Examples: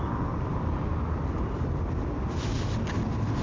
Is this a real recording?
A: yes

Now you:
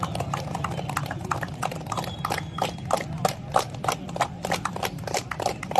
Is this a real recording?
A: yes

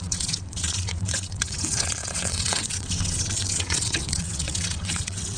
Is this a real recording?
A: no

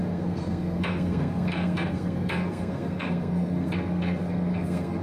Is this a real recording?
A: no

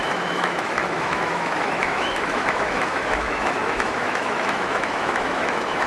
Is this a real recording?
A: no